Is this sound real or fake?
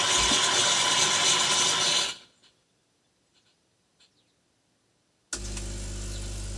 real